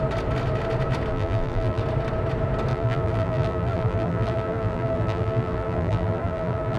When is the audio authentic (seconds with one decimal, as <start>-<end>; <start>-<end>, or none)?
0.0-1.1; 1.8-2.7